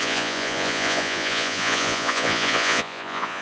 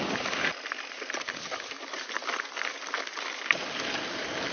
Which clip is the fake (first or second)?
first